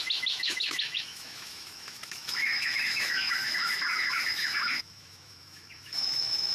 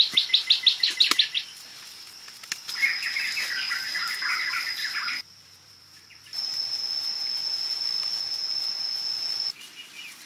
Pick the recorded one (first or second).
second